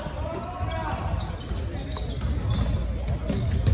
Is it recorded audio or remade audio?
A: recorded